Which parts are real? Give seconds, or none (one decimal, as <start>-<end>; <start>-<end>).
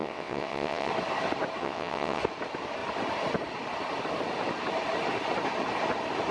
0.9-1.6; 2.2-6.3